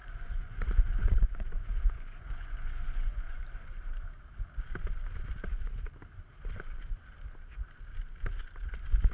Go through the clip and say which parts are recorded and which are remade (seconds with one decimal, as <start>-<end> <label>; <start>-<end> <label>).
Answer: 0.0-3.4 remade; 3.4-9.1 recorded